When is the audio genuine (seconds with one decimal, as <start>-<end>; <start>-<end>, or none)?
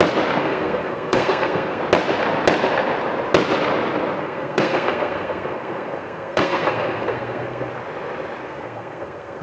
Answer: 0.0-0.4; 1.8-4.2; 7.7-8.4